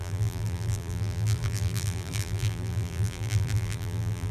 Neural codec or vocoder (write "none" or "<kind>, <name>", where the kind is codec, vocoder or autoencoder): vocoder, BigVGAN v2